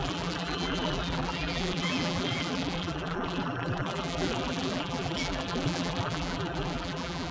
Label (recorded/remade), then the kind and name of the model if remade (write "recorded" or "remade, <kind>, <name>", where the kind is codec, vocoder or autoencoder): remade, vocoder, BigVGAN v2